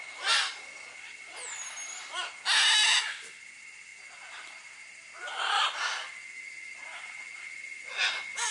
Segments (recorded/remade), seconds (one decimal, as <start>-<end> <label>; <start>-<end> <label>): 0.0-8.5 recorded